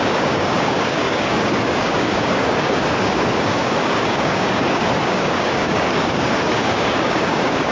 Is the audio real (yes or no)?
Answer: no